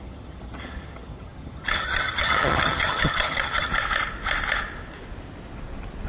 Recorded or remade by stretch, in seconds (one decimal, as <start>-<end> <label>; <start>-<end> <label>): 0.0-3.7 remade; 3.7-6.1 recorded